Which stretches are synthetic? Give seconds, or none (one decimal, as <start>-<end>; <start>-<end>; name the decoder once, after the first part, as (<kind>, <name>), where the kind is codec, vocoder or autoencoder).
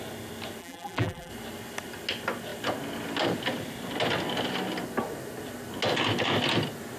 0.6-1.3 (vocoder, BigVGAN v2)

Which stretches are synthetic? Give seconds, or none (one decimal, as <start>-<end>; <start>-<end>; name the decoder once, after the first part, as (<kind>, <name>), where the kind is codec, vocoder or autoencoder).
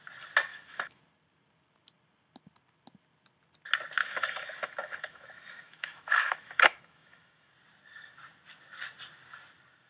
0.5-1.0 (autoencoder, DAC-VAE); 4.0-7.5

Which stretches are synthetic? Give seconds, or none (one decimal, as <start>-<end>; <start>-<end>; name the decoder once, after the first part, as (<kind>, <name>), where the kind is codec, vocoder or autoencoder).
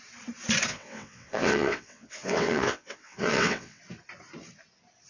0.7-3.8 (vocoder, WaveNeXt)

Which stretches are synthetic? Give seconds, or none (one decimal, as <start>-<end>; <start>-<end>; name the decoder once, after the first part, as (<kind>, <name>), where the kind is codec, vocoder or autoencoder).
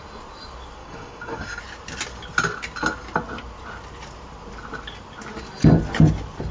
0.8-1.6 (codec, DAC)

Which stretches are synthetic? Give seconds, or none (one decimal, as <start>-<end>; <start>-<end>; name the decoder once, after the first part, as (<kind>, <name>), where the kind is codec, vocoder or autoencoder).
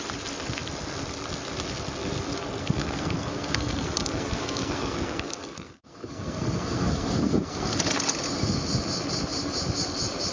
2.6-7.8 (codec, SNAC)